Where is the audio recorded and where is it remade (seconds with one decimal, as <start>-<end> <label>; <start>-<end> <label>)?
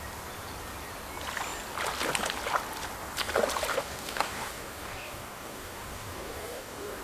0.0-3.7 recorded; 3.7-7.0 remade